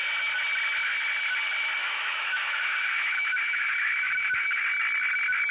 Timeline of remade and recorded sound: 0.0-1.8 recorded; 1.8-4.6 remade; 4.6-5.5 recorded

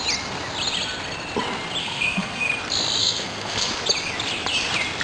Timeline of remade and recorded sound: 0.0-1.8 recorded; 1.8-2.5 remade; 2.5-3.0 recorded; 3.0-3.7 remade; 3.7-5.0 recorded

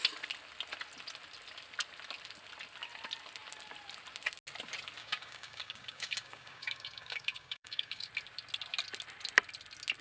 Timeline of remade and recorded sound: 0.0-5.0 recorded; 5.0-8.1 remade; 8.1-10.0 recorded

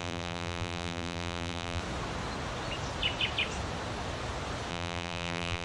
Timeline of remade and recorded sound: 0.0-1.8 remade; 1.8-4.7 recorded; 4.7-5.6 remade

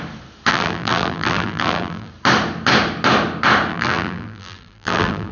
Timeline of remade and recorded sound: 0.0-0.5 recorded; 0.5-2.1 remade; 2.1-3.7 recorded; 3.7-5.3 remade

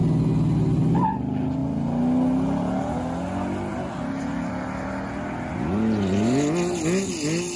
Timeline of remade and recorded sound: 0.0-7.6 recorded

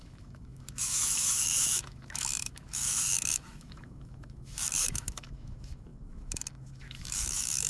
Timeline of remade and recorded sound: 0.0-7.7 remade

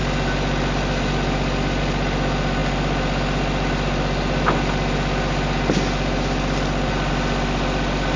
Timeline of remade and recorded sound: 0.0-8.2 recorded